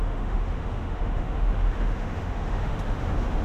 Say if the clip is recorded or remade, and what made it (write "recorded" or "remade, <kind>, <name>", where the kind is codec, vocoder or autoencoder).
remade, autoencoder, DAC-VAE